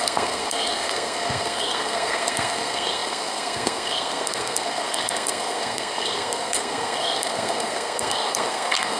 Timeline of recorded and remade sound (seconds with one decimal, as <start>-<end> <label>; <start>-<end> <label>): 0.0-9.0 remade